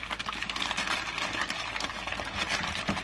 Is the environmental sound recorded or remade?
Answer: recorded